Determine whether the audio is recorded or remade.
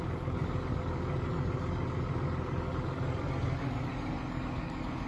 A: remade